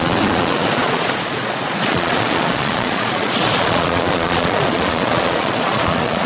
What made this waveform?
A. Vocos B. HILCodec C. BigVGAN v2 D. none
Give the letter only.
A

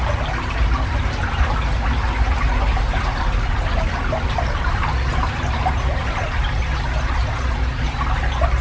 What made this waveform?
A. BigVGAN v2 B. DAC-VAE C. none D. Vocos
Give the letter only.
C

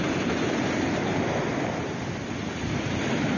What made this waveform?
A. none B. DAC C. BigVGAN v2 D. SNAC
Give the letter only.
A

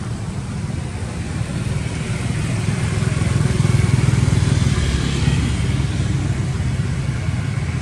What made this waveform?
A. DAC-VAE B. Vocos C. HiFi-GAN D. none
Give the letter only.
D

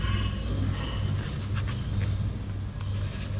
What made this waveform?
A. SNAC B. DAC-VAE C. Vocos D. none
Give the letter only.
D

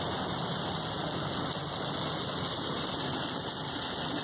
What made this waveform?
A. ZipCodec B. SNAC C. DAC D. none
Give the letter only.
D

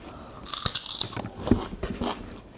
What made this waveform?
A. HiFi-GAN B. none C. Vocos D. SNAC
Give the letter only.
B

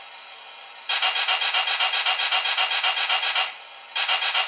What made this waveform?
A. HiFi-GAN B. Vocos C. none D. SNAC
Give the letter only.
C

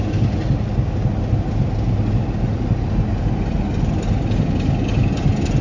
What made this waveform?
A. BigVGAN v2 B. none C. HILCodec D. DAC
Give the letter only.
B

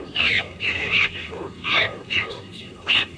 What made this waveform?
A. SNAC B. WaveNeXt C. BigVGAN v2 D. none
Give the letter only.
A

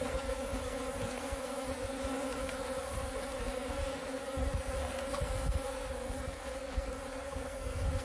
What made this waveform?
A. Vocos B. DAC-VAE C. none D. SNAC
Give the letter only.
D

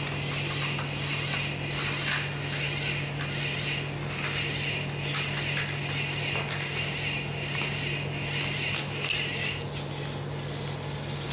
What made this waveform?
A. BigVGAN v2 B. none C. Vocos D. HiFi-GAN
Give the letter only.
B